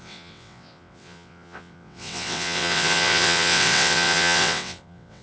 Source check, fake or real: fake